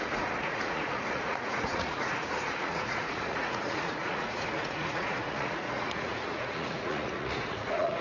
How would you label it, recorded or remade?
remade